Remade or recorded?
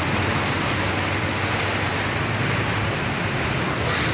recorded